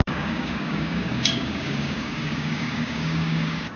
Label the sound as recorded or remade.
remade